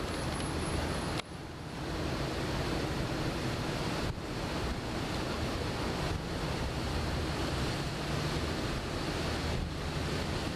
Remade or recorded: recorded